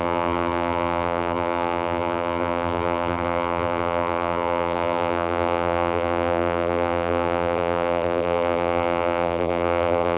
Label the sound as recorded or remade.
remade